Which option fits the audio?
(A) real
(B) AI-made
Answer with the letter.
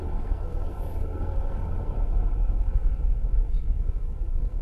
B